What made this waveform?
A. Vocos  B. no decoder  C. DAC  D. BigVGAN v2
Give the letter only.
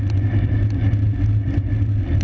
B